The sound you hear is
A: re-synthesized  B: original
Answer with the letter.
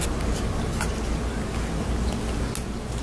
B